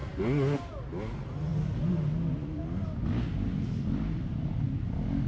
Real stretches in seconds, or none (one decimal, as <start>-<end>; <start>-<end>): 0.0-5.3